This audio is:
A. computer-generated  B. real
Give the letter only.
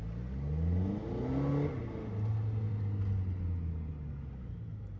B